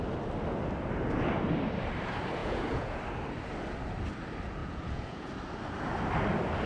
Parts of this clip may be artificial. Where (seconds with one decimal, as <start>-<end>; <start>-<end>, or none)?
2.4-3.0; 4.6-5.3